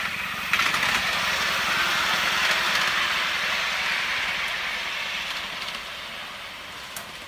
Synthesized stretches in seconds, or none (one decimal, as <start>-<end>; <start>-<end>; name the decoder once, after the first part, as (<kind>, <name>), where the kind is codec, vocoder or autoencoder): 0.0-0.6 (vocoder, BigVGAN v2); 3.2-7.3